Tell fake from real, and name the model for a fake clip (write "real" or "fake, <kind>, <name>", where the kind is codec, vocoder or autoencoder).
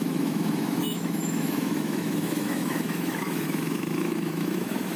fake, autoencoder, DAC-VAE